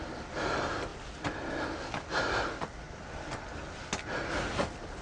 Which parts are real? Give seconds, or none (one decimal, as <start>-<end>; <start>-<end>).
0.0-5.0